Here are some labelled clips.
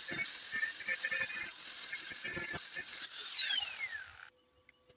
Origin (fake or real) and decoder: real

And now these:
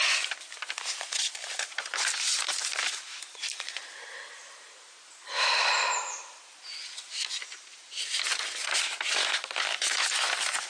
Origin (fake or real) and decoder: real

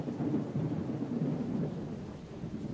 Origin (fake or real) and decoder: real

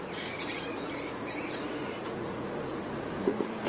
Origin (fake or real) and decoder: fake, vocoder, Vocos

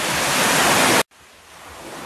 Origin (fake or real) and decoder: real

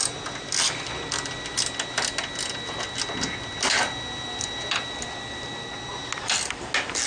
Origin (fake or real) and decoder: real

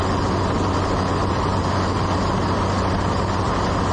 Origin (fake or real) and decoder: real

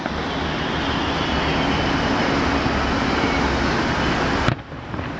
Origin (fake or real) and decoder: real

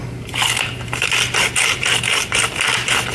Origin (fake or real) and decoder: real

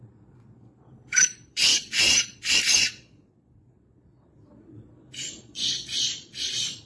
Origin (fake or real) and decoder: fake, vocoder, Vocos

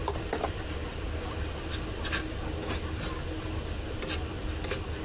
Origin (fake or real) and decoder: real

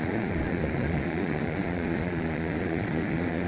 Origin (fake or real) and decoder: fake, vocoder, Vocos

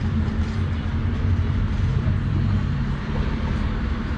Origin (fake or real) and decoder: fake, vocoder, BigVGAN v2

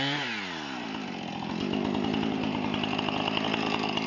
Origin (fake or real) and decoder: real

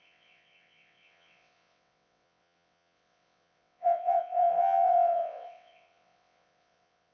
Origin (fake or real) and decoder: fake, vocoder, WaveNeXt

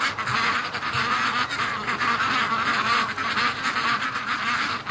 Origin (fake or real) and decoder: real